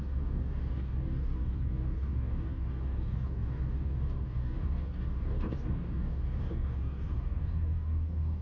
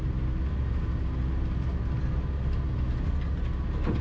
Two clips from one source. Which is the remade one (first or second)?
first